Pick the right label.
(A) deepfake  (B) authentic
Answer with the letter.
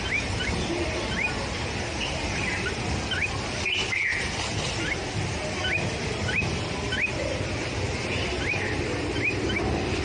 B